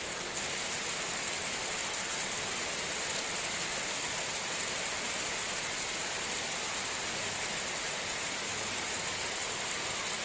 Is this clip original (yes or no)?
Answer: yes